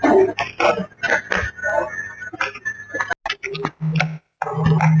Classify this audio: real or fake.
real